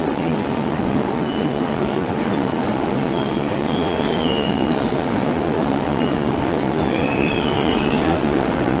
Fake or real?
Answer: fake